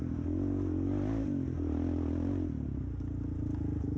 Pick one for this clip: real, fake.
real